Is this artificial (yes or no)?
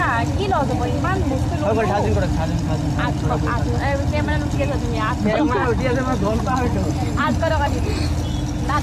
no